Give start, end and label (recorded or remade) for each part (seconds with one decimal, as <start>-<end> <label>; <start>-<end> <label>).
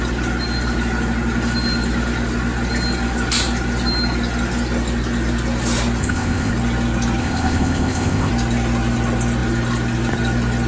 0.0-6.0 recorded; 6.0-6.5 remade; 6.5-7.2 recorded; 7.2-8.3 remade; 8.3-10.7 recorded